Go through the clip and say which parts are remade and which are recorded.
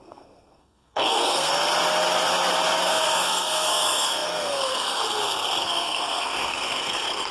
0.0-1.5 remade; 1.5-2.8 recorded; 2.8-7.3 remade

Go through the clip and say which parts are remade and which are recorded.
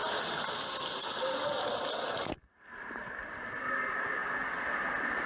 0.0-5.3 recorded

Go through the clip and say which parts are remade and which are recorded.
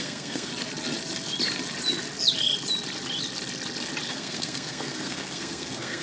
0.0-0.5 remade; 0.5-4.1 recorded; 4.1-6.0 remade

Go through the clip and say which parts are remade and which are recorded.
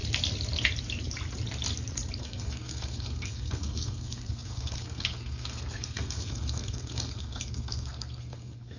0.0-2.2 recorded; 2.2-8.8 remade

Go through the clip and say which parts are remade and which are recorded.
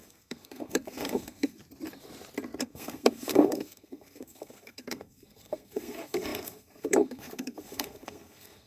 0.0-1.6 remade; 1.6-2.6 recorded; 2.6-8.7 remade